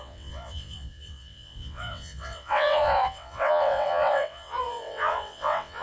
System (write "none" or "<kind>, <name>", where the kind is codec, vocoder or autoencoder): vocoder, WaveNeXt